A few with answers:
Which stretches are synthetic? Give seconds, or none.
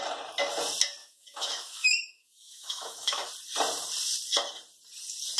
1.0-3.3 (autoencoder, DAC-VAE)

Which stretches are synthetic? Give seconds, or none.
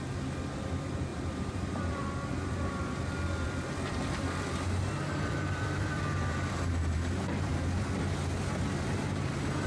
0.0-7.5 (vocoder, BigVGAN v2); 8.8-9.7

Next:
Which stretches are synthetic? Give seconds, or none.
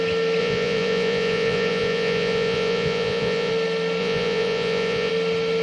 0.4-3.5 (vocoder, Vocos); 4.0-5.1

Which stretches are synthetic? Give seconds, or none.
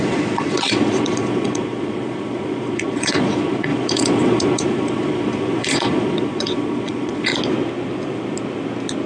0.0-7.3 (vocoder, Vocos)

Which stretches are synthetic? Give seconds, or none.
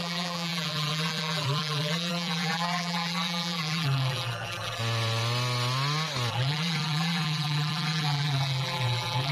0.0-4.8 (vocoder, BigVGAN v2); 6.3-9.3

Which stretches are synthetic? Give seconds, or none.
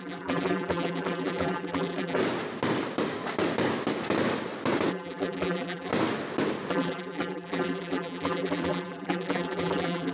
0.0-2.2 (vocoder, BigVGAN v2); 4.9-5.9; 6.7-10.1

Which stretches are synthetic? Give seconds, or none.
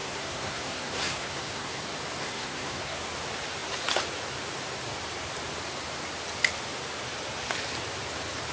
0.0-1.8 (codec, SNAC); 2.2-3.0